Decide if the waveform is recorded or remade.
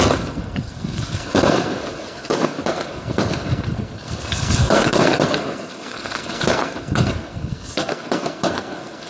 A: remade